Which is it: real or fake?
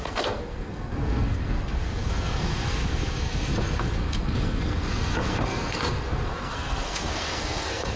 fake